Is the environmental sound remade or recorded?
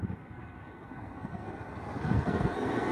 remade